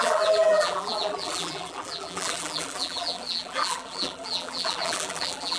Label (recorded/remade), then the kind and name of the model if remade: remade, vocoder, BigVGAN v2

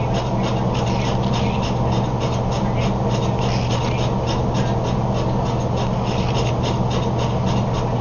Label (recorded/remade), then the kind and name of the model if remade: recorded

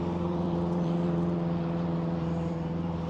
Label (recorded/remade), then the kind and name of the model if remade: remade, vocoder, BigVGAN v2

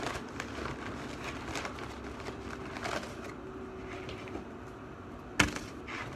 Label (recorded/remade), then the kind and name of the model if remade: recorded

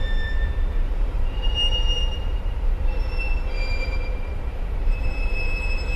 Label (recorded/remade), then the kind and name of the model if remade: remade, vocoder, BigVGAN v2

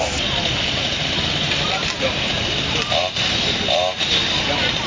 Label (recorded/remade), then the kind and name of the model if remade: remade, vocoder, BigVGAN v2